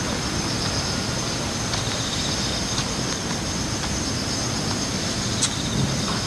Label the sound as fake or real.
real